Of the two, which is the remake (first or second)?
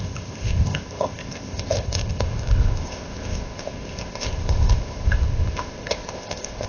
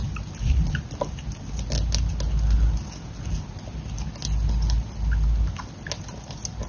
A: first